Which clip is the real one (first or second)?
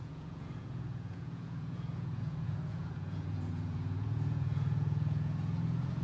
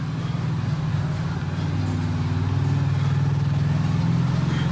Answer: second